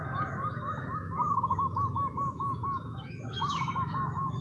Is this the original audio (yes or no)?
no